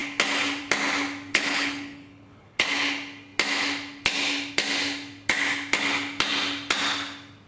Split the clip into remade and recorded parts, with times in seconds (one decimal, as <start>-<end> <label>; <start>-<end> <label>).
0.0-1.3 recorded; 1.3-2.8 remade; 2.8-7.5 recorded